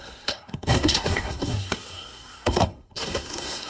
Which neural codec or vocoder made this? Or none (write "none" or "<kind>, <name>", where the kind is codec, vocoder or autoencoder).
codec, SNAC